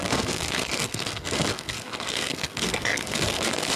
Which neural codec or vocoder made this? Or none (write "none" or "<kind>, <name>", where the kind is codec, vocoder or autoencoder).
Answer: codec, SNAC